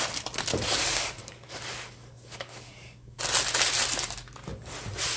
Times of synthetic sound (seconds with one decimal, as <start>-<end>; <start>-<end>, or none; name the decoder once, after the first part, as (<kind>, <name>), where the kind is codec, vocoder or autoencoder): 0.5-3.2 (codec, DAC)